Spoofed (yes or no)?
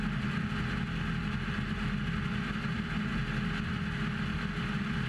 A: no